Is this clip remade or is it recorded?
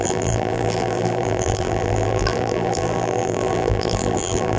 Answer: remade